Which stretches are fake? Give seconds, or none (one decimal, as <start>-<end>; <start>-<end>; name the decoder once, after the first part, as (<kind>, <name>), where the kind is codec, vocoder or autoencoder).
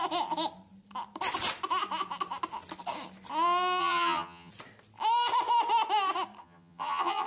3.8-4.5 (vocoder, HiFi-GAN); 6.4-7.3